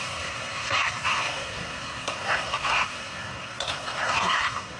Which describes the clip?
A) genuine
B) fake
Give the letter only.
B